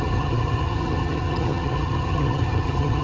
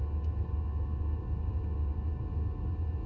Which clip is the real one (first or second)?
second